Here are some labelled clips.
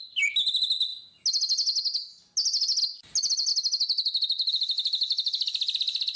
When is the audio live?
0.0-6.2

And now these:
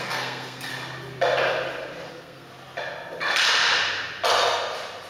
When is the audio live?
0.7-2.1; 2.5-5.1

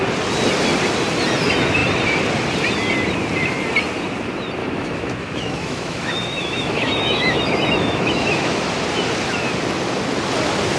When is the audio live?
0.0-4.6; 8.6-10.8